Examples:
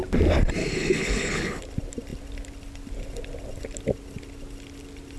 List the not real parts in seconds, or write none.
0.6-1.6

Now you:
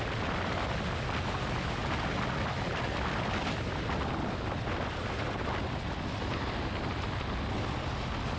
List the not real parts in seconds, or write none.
none